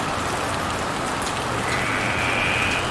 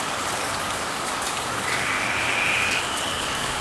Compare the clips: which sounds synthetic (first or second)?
second